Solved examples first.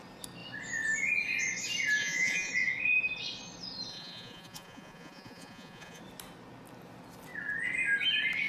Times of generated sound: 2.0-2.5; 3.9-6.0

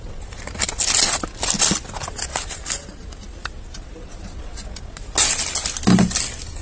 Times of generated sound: none